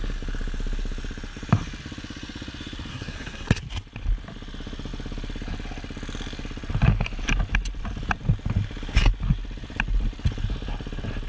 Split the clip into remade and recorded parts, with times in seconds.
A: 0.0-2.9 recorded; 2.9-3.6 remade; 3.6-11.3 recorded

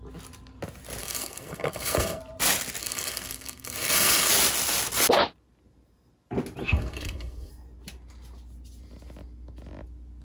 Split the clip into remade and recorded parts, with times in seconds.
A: 0.0-1.0 recorded; 1.0-2.2 remade; 2.2-2.8 recorded; 2.8-4.3 remade; 4.3-6.6 recorded; 6.6-7.5 remade; 7.5-10.2 recorded